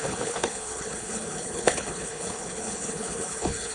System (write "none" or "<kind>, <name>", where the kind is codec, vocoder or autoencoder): codec, HILCodec